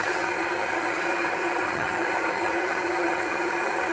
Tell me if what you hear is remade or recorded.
remade